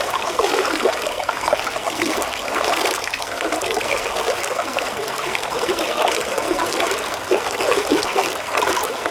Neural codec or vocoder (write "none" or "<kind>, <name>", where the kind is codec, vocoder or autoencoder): codec, SNAC